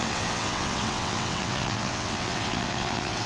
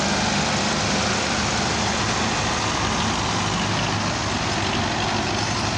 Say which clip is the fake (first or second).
first